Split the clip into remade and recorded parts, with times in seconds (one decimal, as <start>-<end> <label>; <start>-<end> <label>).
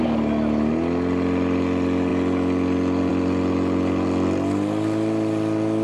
0.0-5.8 recorded